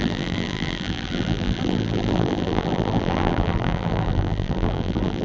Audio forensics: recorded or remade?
remade